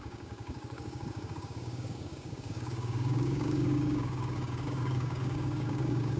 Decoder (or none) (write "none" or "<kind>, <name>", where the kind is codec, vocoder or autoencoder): codec, DAC